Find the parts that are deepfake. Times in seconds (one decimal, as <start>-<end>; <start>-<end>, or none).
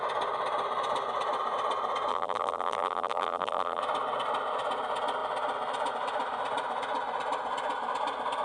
2.1-3.8